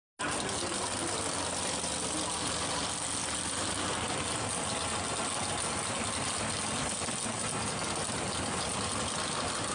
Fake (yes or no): no